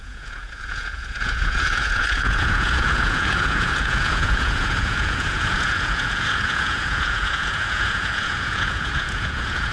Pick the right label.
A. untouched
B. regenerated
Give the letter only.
B